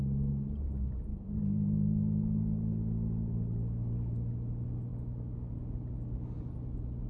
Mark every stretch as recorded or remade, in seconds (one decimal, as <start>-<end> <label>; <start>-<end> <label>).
0.0-1.1 recorded; 1.1-4.3 remade; 4.3-4.9 recorded; 4.9-5.5 remade; 5.5-7.1 recorded